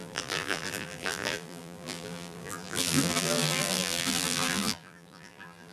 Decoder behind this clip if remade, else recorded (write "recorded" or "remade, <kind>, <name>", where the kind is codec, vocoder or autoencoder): remade, vocoder, BigVGAN v2